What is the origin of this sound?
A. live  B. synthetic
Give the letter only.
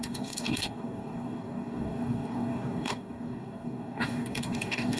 B